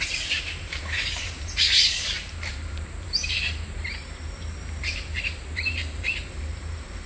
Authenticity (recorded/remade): remade